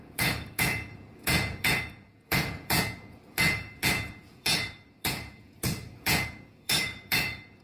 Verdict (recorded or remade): remade